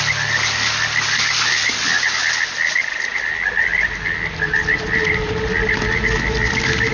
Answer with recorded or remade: recorded